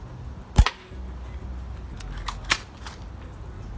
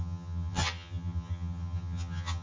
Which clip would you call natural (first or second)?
first